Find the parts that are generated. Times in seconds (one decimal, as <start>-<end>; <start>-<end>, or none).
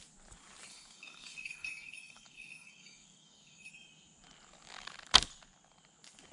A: 0.7-3.7